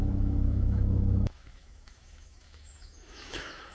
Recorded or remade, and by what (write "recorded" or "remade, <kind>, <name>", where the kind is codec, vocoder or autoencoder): remade, autoencoder, DAC-VAE